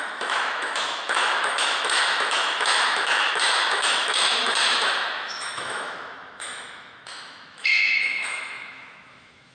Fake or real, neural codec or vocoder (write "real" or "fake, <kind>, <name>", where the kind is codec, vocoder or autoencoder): fake, autoencoder, DAC-VAE